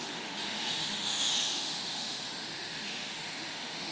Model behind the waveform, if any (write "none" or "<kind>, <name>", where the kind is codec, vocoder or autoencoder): autoencoder, DAC-VAE